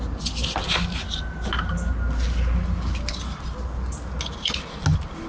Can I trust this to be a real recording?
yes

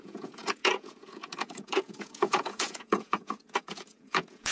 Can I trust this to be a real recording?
no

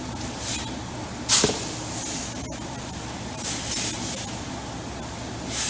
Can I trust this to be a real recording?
yes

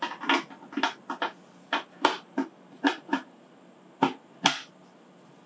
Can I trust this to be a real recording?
yes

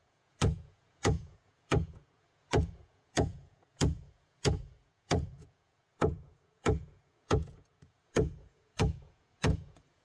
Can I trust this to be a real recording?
no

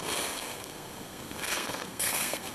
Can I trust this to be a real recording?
no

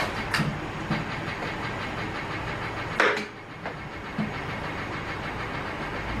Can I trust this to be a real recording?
yes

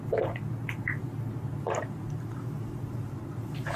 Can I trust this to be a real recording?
no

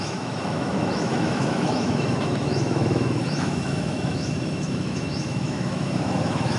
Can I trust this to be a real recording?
no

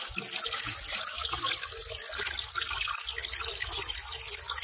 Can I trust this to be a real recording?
yes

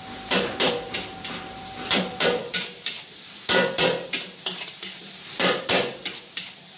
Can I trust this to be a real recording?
no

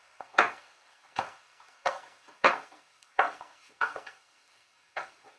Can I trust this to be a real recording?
no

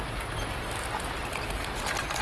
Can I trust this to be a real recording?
yes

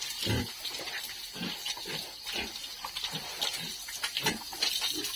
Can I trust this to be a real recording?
yes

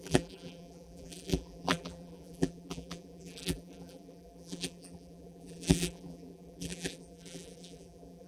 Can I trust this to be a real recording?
no